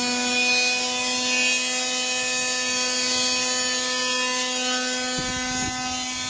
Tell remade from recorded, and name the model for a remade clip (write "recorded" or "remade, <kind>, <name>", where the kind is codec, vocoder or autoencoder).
recorded